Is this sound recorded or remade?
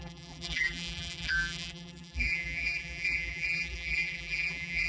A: remade